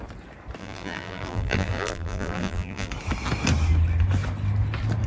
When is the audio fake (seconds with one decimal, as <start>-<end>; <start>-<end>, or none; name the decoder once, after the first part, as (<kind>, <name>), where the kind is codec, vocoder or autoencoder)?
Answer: 0.6-2.9 (vocoder, BigVGAN v2)